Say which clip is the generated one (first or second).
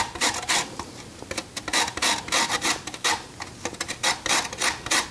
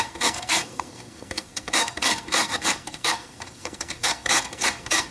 second